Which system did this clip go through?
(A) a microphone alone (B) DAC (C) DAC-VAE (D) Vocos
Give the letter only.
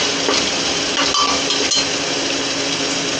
A